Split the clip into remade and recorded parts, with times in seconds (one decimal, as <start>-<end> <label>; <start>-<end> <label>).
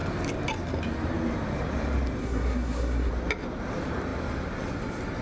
0.0-2.2 recorded; 2.2-3.1 remade; 3.1-5.2 recorded